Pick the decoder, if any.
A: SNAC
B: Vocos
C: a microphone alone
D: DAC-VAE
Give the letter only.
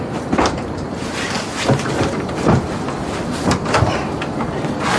C